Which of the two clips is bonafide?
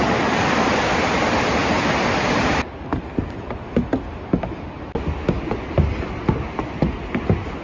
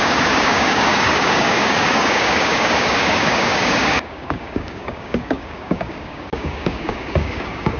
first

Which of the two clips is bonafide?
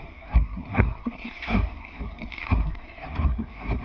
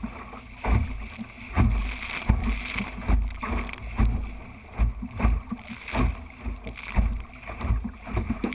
second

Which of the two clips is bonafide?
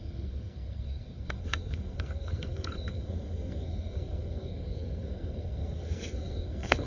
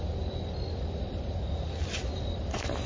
second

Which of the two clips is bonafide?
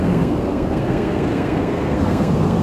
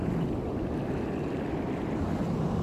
second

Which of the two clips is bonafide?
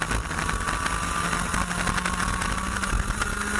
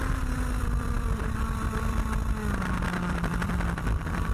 first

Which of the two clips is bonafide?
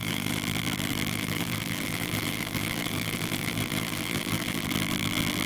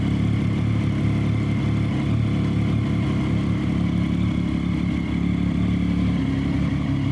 second